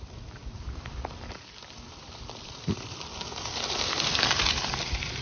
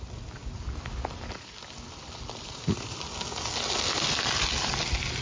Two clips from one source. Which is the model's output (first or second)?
first